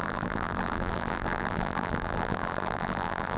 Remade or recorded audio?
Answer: remade